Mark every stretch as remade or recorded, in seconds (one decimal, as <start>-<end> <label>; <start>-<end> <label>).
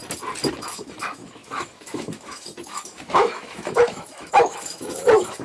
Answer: 0.0-0.6 recorded; 0.6-5.4 remade